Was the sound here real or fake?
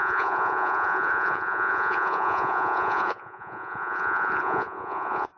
fake